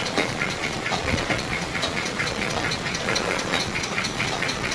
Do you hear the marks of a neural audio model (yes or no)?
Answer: yes